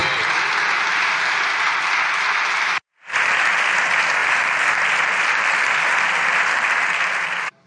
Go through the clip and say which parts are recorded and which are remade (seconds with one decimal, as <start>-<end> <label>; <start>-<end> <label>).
0.0-7.7 recorded